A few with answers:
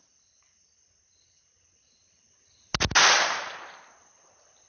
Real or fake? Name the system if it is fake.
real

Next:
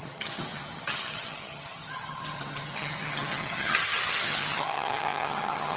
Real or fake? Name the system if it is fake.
fake, vocoder, HiFi-GAN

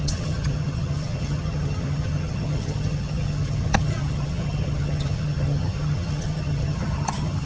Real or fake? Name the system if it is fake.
fake, vocoder, HiFi-GAN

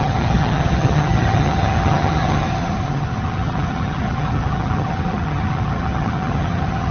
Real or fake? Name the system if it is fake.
fake, vocoder, HiFi-GAN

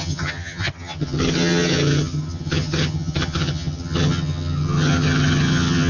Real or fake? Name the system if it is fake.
fake, vocoder, HiFi-GAN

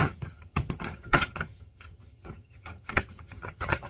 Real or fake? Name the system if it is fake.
fake, vocoder, HiFi-GAN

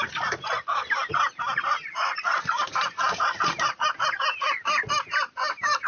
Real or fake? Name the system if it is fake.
real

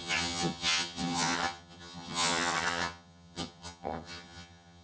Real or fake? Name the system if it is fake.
fake, vocoder, HiFi-GAN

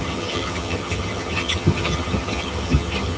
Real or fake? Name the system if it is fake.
fake, vocoder, HiFi-GAN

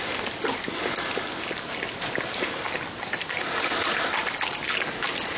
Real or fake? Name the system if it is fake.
real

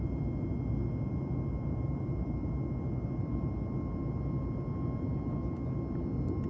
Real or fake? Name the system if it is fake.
real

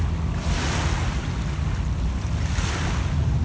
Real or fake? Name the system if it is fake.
real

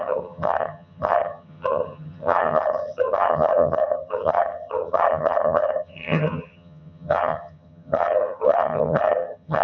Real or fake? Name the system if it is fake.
fake, vocoder, HiFi-GAN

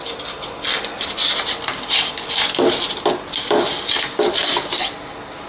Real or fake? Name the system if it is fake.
real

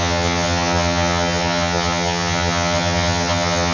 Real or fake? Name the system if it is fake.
fake, vocoder, HiFi-GAN